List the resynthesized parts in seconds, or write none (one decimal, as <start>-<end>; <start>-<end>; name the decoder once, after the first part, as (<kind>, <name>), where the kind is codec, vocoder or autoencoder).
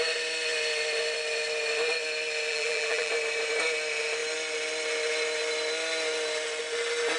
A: 2.5-3.1 (vocoder, BigVGAN v2)